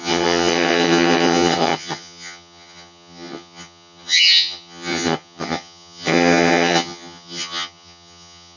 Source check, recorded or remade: remade